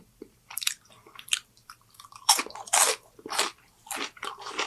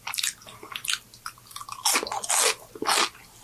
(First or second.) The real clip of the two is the second